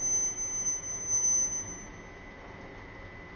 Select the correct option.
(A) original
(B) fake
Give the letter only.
A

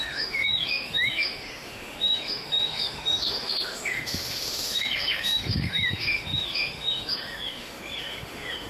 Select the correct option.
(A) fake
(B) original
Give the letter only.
A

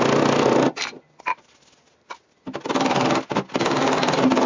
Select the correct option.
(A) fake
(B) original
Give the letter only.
B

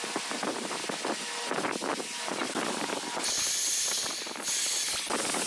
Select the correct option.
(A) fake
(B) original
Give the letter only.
B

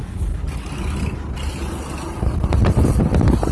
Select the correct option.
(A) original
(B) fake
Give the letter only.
A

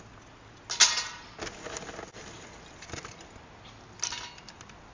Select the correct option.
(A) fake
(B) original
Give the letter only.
B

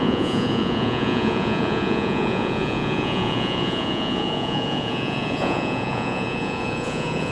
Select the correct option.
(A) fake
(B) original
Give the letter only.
A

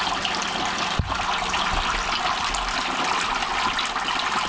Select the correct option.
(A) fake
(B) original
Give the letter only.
B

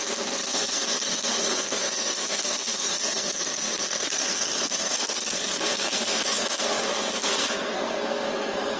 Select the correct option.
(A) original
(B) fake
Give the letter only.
B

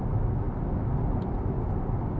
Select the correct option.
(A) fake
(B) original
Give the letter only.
B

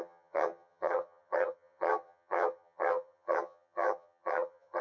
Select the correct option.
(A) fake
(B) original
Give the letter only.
A